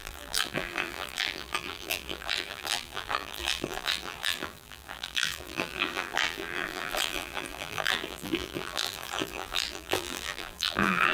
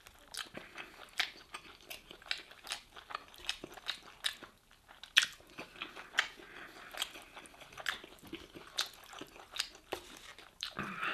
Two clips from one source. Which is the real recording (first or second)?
second